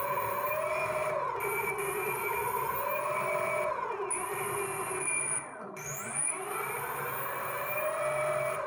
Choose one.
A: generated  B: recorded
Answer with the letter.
B